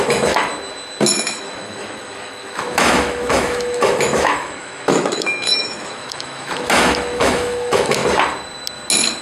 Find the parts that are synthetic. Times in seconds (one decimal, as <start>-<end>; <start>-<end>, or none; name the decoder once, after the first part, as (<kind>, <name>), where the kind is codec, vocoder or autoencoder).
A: 0.0-0.5 (autoencoder, DAC-VAE); 1.1-8.0